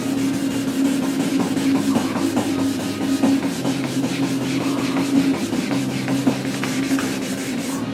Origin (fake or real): real